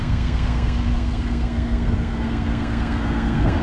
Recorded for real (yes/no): no